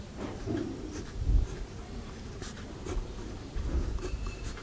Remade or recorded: remade